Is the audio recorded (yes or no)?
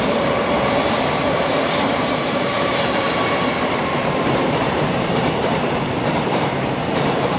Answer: no